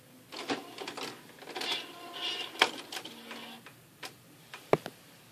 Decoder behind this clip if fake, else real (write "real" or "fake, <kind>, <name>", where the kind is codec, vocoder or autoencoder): real